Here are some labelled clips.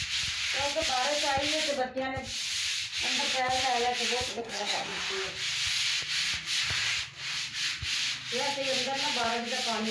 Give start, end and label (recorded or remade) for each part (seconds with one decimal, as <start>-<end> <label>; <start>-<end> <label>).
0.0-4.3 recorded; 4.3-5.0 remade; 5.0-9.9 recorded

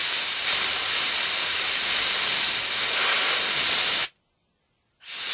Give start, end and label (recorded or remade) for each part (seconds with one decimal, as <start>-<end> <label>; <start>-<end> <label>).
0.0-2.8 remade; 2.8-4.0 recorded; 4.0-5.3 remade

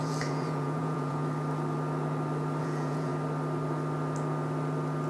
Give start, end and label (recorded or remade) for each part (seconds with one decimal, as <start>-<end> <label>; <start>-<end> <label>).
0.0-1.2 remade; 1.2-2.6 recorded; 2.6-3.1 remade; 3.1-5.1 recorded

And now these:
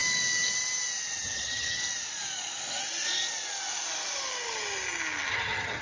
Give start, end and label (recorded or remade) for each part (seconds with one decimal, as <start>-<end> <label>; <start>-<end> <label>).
0.0-1.2 recorded; 1.2-1.8 remade; 1.8-5.3 recorded; 5.3-5.8 remade

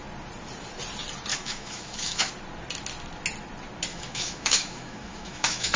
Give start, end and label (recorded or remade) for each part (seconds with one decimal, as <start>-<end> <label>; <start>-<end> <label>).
0.0-1.3 recorded; 1.3-2.3 remade; 2.3-3.9 recorded; 3.9-5.8 remade